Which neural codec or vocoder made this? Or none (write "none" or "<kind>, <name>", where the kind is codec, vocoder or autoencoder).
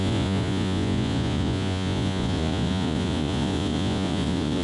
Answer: vocoder, Vocos